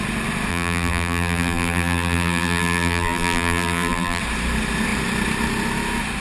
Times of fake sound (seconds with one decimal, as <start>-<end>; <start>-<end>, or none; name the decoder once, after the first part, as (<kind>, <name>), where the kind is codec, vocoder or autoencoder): 0.5-4.2 (vocoder, BigVGAN v2)